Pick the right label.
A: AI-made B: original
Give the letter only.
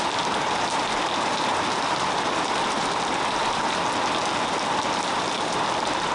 A